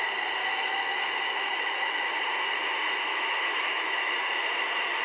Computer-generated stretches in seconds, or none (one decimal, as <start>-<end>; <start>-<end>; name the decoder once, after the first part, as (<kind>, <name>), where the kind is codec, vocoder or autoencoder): 0.4-2.1 (autoencoder, DAC-VAE); 3.1-4.1